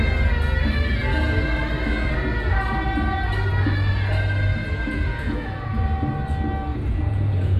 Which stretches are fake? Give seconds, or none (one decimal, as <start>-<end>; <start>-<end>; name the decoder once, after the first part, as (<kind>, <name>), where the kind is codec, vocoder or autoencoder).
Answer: 4.6-5.8 (vocoder, Vocos); 6.7-7.6